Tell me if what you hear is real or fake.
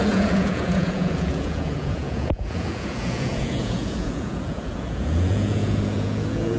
fake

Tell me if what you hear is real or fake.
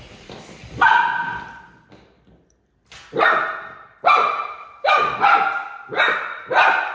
real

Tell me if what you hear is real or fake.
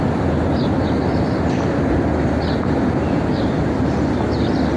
real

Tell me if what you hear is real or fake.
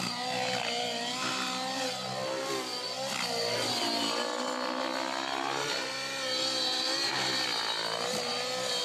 real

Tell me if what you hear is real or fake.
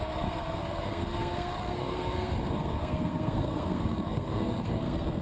fake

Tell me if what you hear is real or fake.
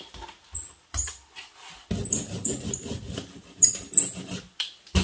real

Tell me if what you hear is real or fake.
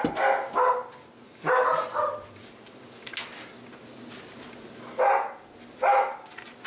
real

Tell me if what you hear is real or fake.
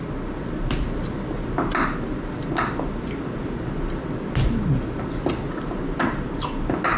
real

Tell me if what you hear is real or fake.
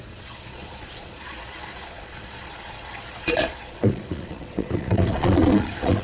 fake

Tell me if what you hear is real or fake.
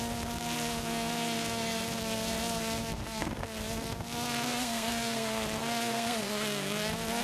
fake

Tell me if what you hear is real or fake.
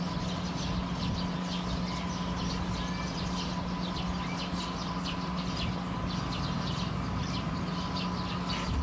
real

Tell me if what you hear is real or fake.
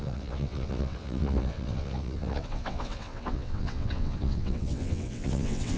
fake